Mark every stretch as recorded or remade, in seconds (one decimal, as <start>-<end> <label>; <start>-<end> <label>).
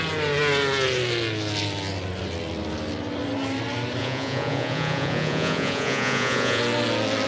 0.0-4.0 recorded; 4.0-6.6 remade; 6.6-7.3 recorded